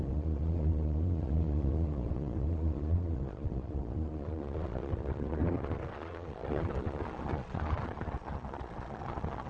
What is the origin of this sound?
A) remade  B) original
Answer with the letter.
A